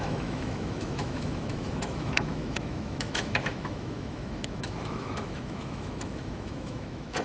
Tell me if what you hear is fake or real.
fake